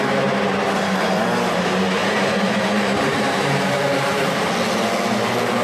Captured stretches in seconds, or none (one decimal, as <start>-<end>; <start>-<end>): 0.0-2.0; 4.5-5.6